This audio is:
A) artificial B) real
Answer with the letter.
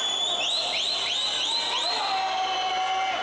B